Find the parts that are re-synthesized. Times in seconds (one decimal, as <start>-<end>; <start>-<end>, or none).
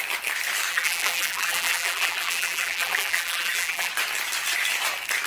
0.7-3.9